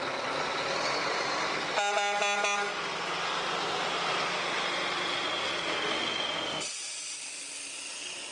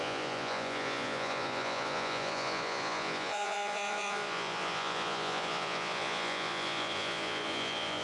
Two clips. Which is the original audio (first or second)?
first